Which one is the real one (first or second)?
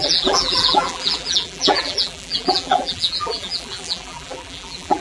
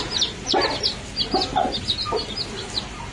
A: second